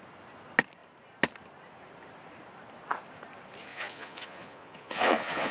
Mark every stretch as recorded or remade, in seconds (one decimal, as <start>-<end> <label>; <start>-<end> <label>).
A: 0.0-3.7 recorded; 3.7-5.5 remade